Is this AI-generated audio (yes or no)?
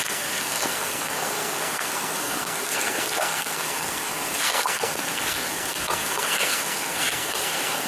yes